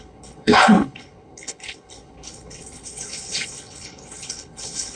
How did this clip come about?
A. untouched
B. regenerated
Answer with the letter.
B